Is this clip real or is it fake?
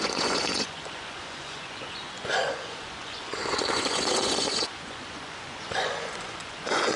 fake